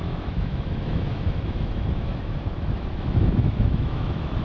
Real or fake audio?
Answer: fake